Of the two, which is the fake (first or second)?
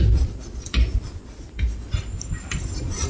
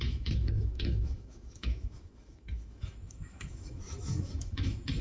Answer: second